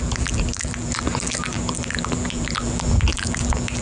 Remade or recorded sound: remade